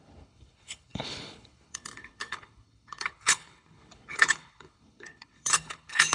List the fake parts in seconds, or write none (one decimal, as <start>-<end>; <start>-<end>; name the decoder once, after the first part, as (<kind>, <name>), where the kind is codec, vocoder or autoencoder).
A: 0.0-6.1 (codec, HILCodec)